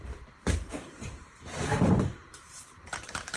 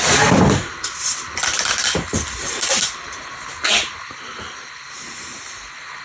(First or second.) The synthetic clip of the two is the first